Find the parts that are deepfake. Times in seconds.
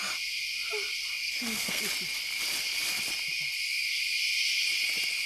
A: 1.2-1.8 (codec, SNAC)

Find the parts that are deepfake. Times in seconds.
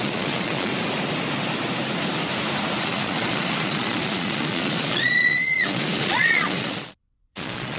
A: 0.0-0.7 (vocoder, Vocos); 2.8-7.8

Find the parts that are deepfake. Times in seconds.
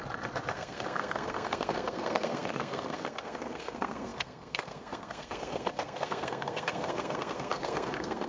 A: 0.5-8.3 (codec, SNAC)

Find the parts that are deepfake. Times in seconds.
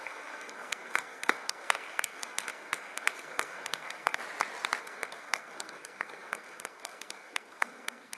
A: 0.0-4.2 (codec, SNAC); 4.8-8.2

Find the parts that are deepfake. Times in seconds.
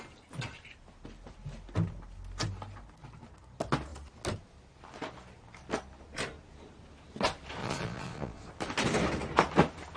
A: 7.6-8.5 (vocoder, Vocos)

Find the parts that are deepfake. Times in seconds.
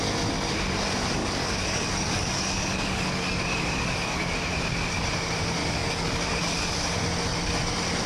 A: 1.2-4.5 (codec, DAC); 5.6-6.4